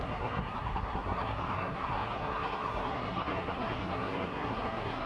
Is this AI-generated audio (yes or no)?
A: yes